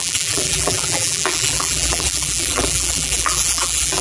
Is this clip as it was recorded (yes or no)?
no